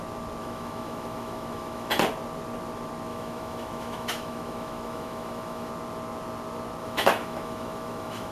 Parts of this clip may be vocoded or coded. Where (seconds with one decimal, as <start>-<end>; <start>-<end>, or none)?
0.4-1.9; 3.1-5.7; 6.8-8.3